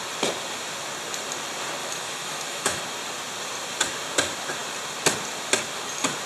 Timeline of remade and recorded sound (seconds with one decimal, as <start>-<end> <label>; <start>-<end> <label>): 0.0-1.8 recorded; 1.8-2.8 remade; 2.8-6.3 recorded